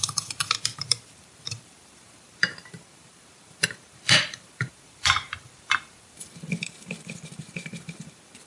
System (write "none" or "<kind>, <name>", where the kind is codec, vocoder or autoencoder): vocoder, BigVGAN v2